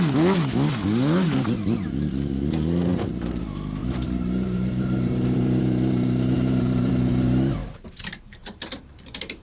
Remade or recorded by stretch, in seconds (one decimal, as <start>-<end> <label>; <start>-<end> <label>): 0.0-2.9 recorded; 2.9-3.4 remade; 3.4-3.8 recorded; 3.8-6.9 remade; 6.9-7.6 recorded; 7.6-8.7 remade; 8.7-9.4 recorded